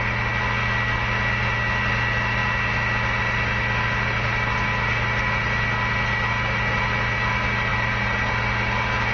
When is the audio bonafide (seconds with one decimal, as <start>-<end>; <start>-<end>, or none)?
0.0-9.1